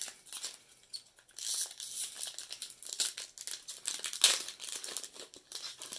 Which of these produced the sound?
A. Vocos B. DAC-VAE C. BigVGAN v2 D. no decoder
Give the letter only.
D